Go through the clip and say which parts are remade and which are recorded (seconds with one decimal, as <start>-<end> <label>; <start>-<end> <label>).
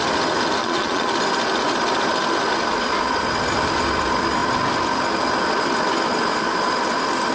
0.0-0.6 recorded; 0.6-1.1 remade; 1.1-7.3 recorded